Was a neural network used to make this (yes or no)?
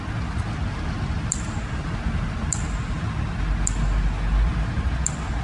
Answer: no